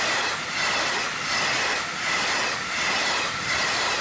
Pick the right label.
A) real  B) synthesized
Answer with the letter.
A